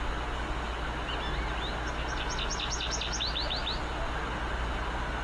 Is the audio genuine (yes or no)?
yes